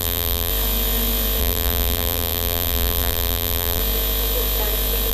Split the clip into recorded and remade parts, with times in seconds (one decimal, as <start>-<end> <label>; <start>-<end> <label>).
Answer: 0.0-0.5 remade; 0.5-1.4 recorded; 1.4-3.8 remade; 3.8-5.1 recorded